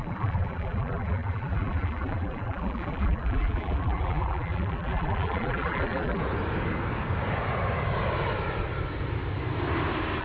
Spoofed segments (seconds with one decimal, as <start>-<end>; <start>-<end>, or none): 0.0-6.2